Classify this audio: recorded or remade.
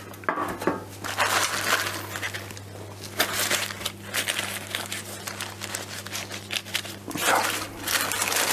recorded